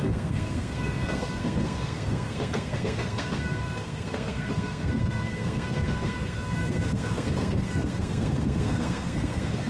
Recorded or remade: remade